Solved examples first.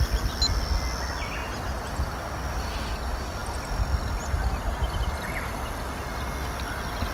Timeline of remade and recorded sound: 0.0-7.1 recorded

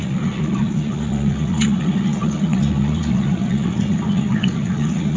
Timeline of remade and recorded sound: 0.0-5.2 remade

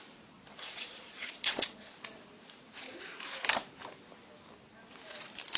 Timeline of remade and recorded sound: 0.0-0.5 recorded; 0.5-1.9 remade; 1.9-5.6 recorded

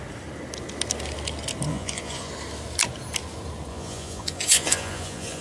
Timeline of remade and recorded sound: 0.0-1.7 recorded; 1.7-2.3 remade; 2.3-3.7 recorded; 3.7-5.4 remade

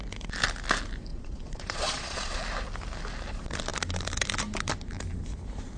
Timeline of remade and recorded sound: 0.0-1.1 recorded; 1.1-2.4 remade; 2.4-5.8 recorded

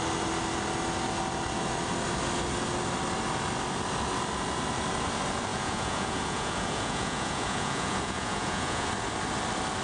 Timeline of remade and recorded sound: 0.0-5.5 recorded; 5.5-8.9 remade; 8.9-9.8 recorded

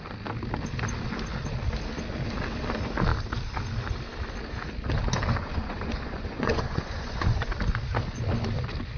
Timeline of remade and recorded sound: 0.0-5.4 recorded; 5.4-7.5 remade; 7.5-9.0 recorded